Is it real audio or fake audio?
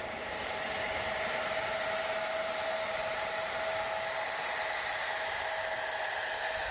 real